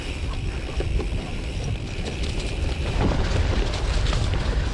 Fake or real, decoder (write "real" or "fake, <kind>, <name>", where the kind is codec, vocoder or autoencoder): fake, vocoder, BigVGAN v2